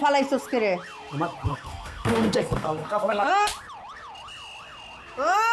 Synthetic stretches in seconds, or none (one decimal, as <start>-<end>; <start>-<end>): 1.5-3.3